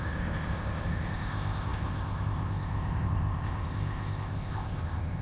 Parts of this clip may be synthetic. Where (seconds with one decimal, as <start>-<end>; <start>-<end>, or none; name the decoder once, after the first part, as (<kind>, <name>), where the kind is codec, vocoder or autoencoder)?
0.0-5.2 (codec, ZipCodec)